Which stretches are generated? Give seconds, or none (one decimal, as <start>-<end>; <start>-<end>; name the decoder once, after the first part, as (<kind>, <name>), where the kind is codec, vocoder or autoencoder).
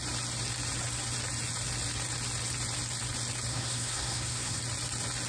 3.5-4.6 (codec, SNAC)